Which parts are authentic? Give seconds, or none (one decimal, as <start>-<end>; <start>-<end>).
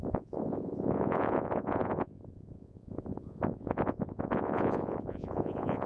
none